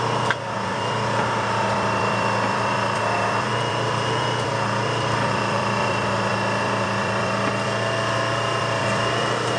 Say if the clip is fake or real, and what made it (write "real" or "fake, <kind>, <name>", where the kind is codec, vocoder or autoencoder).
fake, vocoder, BigVGAN v2